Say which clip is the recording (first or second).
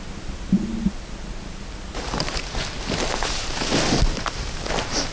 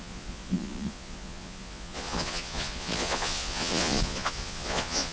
first